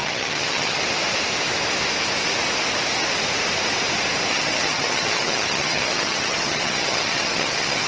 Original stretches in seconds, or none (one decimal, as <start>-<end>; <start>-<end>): 0.8-4.3